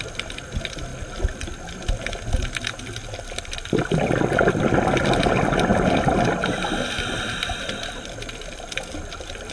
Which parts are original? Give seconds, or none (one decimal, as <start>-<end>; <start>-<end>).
0.0-9.5